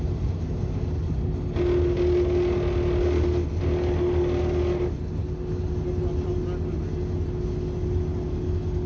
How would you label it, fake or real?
real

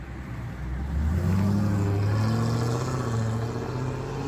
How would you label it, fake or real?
real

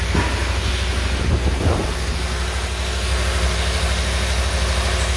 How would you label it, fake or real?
real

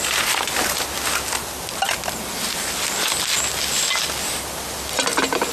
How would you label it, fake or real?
real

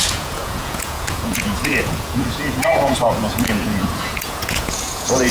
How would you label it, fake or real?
fake